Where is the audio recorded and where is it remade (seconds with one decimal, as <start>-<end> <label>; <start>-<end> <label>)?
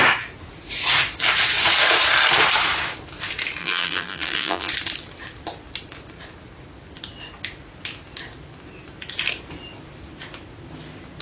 0.0-3.6 recorded; 3.6-4.7 remade; 4.7-11.2 recorded